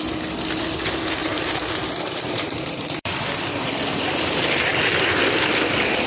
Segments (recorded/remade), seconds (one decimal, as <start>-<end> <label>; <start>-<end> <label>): 0.0-1.2 recorded; 1.2-3.2 remade; 3.2-6.1 recorded